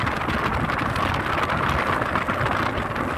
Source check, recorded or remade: recorded